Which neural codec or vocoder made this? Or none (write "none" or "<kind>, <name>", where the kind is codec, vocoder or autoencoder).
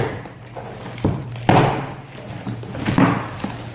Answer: none